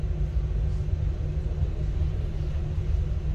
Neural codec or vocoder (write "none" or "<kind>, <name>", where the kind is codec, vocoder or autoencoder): none